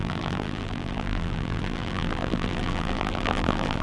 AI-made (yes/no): yes